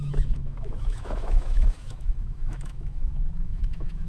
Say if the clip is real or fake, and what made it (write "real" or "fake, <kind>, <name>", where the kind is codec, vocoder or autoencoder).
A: fake, autoencoder, DAC-VAE